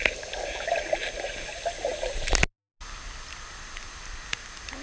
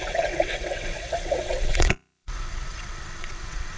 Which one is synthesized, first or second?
second